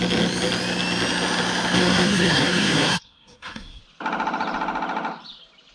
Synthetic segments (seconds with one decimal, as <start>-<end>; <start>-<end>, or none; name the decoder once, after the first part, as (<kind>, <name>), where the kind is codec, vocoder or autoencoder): 1.8-3.8 (codec, SNAC)